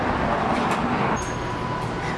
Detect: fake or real real